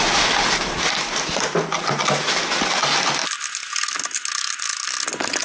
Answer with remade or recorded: recorded